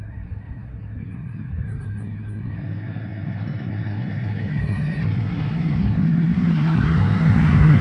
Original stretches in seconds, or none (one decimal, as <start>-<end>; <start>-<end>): none